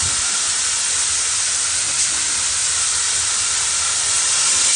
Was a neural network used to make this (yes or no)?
no